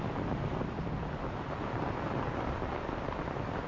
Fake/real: fake